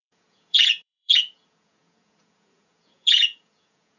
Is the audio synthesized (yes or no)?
yes